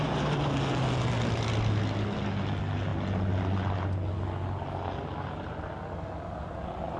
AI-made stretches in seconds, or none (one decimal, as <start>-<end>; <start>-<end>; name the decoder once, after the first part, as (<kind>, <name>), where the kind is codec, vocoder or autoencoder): none